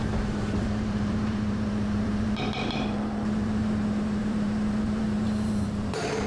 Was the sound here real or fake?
fake